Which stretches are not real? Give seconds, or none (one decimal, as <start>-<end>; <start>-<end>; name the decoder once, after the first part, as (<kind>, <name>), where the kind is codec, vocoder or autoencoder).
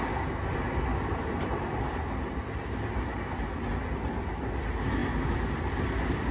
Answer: none